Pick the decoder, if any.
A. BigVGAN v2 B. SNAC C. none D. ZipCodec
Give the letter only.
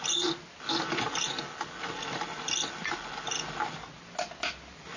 C